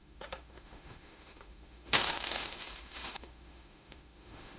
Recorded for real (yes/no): no